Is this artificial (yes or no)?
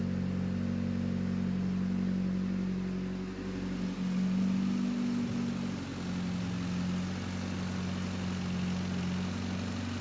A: no